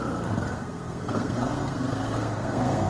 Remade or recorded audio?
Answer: remade